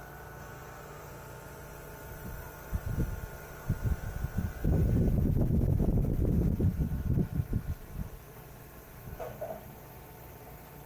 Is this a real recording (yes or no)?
no